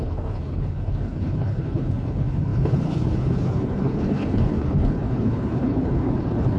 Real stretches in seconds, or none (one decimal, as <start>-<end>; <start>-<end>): none